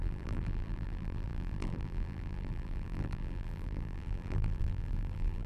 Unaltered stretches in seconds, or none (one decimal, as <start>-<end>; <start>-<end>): none